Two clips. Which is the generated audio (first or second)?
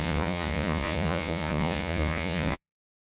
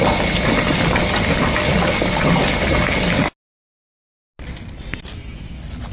first